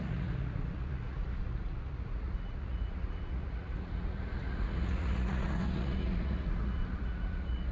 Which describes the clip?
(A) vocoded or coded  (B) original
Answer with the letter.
A